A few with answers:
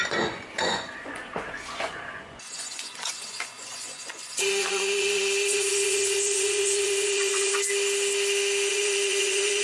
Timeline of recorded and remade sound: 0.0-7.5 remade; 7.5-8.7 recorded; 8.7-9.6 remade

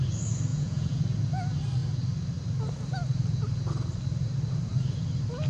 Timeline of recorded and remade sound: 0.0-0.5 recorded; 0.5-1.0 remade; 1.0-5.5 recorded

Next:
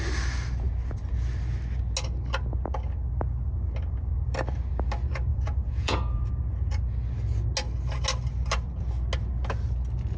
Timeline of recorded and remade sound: 0.0-5.3 recorded; 5.3-6.3 remade; 6.3-10.2 recorded

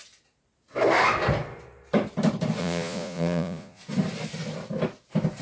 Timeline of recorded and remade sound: 0.0-2.6 recorded; 2.6-3.8 remade; 3.8-5.4 recorded

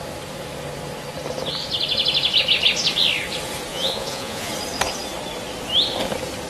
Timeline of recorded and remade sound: 0.0-3.7 recorded; 3.7-4.5 remade; 4.5-6.5 recorded